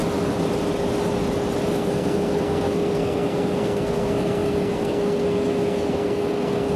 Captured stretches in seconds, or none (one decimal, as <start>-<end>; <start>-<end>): 0.0-1.7